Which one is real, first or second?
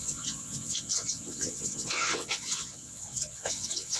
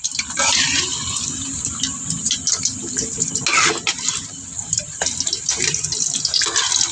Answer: second